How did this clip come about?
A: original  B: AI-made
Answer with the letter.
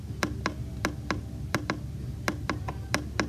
A